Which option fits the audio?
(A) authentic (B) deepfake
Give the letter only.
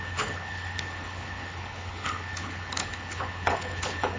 B